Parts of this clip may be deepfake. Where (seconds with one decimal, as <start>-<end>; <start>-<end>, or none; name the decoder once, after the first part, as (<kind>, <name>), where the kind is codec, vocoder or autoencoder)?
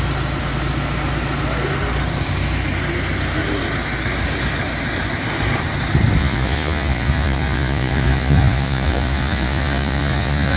6.2-10.6 (vocoder, Vocos)